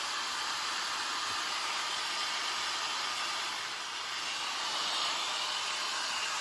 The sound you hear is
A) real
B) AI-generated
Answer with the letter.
A